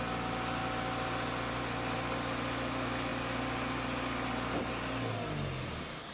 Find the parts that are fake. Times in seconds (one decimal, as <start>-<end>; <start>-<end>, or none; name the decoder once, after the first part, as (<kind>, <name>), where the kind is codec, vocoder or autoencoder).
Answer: none